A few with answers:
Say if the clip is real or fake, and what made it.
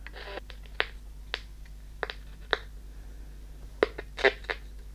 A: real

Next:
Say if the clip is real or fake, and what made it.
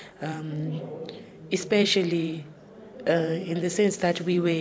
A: fake, vocoder, BigVGAN v2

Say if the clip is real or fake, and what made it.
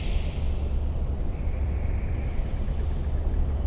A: real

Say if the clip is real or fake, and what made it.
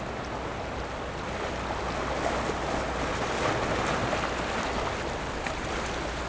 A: real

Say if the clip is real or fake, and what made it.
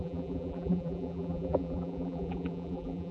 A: fake, vocoder, BigVGAN v2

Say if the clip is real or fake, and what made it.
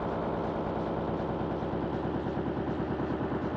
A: real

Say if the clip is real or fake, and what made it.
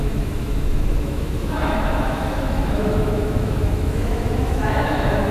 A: fake, autoencoder, DAC-VAE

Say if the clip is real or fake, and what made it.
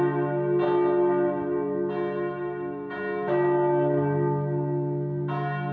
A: real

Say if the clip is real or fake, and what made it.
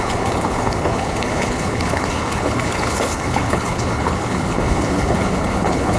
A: fake, codec, HILCodec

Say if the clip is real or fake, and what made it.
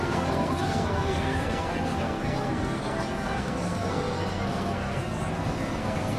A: fake, codec, SNAC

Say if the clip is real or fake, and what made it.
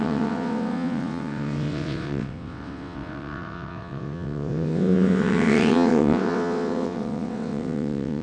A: fake, vocoder, WaveNeXt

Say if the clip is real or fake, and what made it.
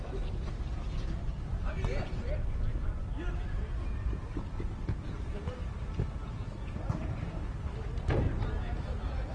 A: real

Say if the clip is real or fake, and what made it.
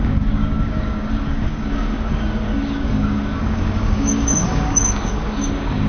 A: fake, codec, DAC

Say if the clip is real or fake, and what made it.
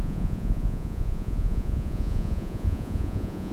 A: fake, vocoder, Vocos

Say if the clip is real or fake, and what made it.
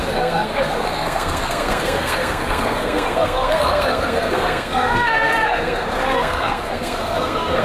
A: fake, codec, SNAC